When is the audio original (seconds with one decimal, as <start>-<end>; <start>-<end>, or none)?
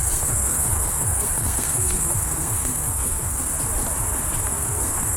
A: 3.5-4.5